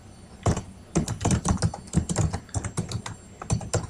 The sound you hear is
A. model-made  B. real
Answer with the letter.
B